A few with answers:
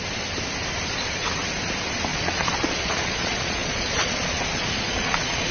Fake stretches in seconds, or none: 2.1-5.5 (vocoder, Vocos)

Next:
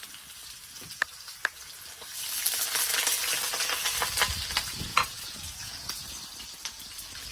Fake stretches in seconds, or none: 4.9-6.1 (vocoder, Vocos)

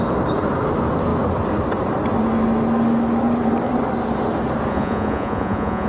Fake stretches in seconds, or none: 4.7-5.9 (vocoder, Vocos)

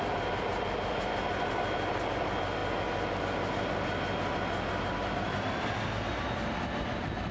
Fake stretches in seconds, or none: none

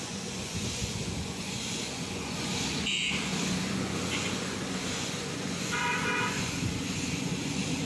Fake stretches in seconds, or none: 0.0-7.9 (vocoder, Vocos)

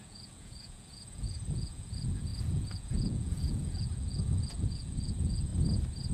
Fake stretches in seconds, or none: 0.0-5.5 (vocoder, Vocos)